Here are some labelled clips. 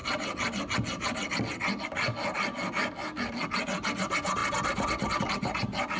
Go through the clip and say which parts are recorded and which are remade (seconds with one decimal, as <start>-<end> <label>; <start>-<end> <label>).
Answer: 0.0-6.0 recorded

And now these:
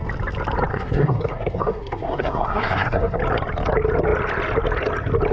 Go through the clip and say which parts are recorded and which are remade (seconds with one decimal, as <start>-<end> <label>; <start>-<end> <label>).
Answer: 0.0-0.7 recorded; 0.7-3.2 remade; 3.2-5.3 recorded

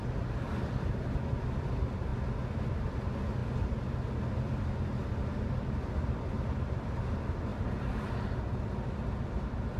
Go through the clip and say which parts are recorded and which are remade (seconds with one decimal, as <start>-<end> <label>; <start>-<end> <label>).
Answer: 0.0-9.8 recorded

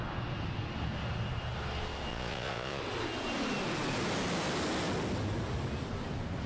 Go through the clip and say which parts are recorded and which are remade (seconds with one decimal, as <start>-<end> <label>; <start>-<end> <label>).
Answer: 0.0-2.1 recorded; 2.1-2.8 remade; 2.8-6.5 recorded

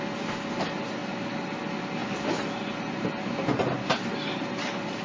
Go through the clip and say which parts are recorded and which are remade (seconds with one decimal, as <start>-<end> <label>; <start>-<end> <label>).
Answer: 0.0-5.0 recorded

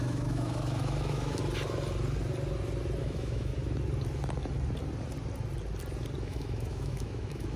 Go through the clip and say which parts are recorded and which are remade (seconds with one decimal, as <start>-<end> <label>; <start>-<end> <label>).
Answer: 0.0-1.4 remade; 1.4-3.0 recorded; 3.0-3.5 remade; 3.5-6.2 recorded; 6.2-7.6 remade